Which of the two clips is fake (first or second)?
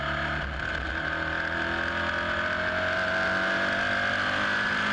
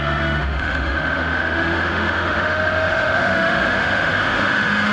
second